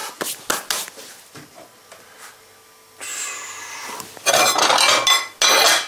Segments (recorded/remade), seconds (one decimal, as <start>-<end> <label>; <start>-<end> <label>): 0.0-5.9 recorded